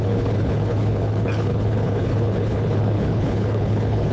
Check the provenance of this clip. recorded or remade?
remade